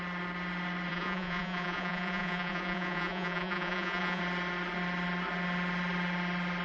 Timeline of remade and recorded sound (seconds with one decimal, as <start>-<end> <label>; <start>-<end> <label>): 0.0-0.9 recorded; 0.9-4.2 remade; 4.2-6.6 recorded

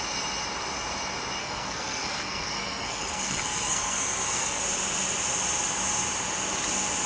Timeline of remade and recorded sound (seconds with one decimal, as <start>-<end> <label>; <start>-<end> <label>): 0.0-1.4 recorded; 1.4-4.6 remade; 4.6-7.1 recorded

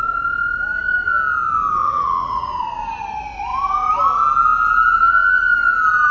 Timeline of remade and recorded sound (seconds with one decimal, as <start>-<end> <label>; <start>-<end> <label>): 0.0-1.8 recorded; 1.8-2.6 remade; 2.6-6.1 recorded

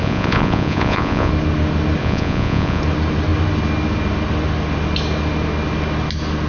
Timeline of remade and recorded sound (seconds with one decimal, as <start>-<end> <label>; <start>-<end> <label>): 0.0-1.3 remade; 1.3-2.0 recorded; 2.0-2.8 remade; 2.8-6.5 recorded

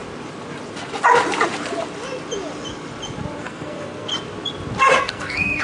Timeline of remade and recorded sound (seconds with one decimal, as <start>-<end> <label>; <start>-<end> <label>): 0.0-3.4 recorded; 3.4-4.1 remade; 4.1-5.0 recorded; 5.0-5.6 remade

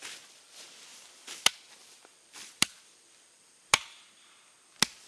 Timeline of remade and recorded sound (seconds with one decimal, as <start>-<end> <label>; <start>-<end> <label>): 0.0-0.9 recorded; 0.9-1.4 remade; 1.4-1.8 recorded; 1.8-4.3 remade; 4.3-5.1 recorded